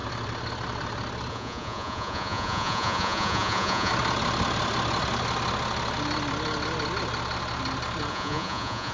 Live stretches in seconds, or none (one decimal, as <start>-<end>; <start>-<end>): 0.0-1.3; 3.9-8.1